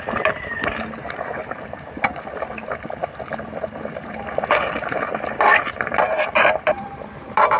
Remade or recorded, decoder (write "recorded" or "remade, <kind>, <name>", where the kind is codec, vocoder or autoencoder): remade, vocoder, BigVGAN v2